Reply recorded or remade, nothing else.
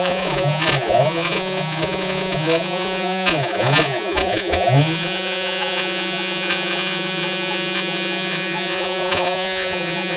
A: remade